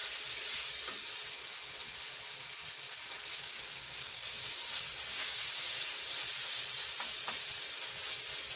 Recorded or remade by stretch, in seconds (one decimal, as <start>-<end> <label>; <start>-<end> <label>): 0.0-3.3 recorded; 3.3-5.8 remade; 5.8-8.6 recorded